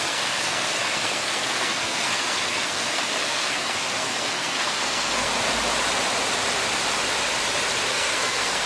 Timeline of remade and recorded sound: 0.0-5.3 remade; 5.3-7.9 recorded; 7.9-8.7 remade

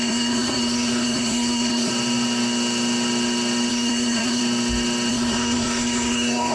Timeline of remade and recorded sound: 0.0-1.9 remade; 1.9-3.7 recorded; 3.7-4.4 remade; 4.4-5.1 recorded; 5.1-6.5 remade